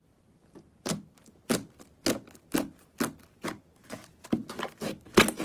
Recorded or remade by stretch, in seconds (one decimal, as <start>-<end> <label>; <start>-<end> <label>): 0.0-5.4 recorded